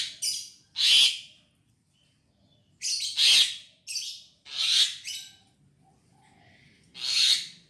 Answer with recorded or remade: recorded